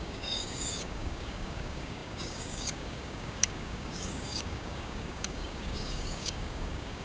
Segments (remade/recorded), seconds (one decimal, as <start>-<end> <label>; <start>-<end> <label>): 0.0-7.0 remade